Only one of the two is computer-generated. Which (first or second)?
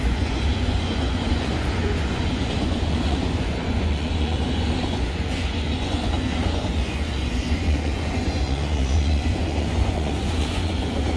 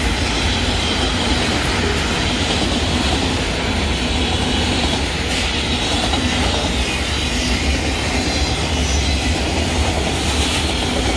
first